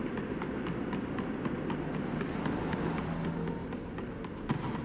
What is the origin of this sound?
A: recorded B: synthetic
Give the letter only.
A